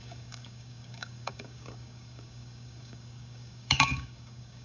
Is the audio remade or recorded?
remade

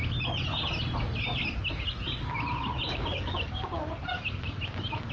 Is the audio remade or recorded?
recorded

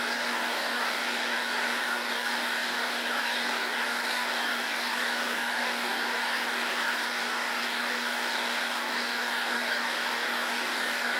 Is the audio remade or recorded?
remade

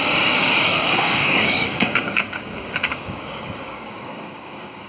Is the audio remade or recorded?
remade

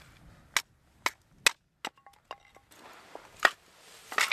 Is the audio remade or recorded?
recorded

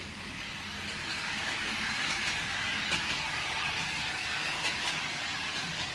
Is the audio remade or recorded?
remade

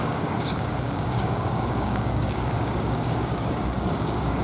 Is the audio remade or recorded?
remade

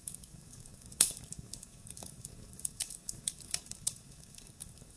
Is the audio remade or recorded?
remade